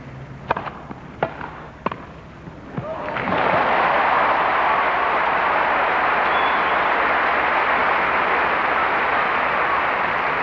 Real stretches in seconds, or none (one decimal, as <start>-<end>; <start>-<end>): 0.0-10.4